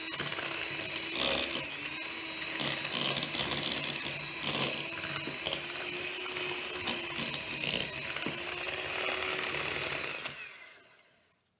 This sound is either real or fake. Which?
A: real